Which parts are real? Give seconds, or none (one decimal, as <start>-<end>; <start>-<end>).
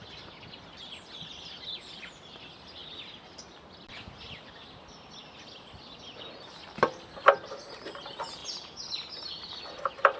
0.0-10.2